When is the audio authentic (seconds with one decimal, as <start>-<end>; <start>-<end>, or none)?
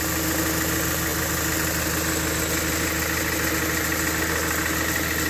0.0-5.3